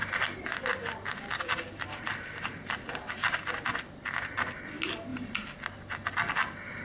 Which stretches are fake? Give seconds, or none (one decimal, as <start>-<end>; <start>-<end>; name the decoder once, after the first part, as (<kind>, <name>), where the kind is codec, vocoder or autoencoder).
none